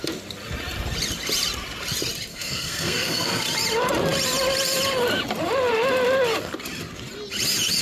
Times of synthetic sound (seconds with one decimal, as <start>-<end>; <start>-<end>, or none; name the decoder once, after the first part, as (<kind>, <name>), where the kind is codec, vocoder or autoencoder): 2.3-3.4 (codec, SNAC)